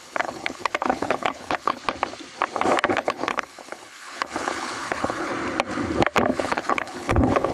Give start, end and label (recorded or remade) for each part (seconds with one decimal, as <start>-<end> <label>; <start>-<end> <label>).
0.0-1.8 remade; 1.8-2.9 recorded; 2.9-5.3 remade; 5.3-6.3 recorded; 6.3-7.5 remade